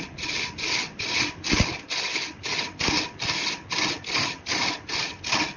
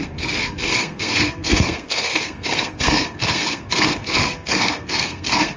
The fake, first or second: second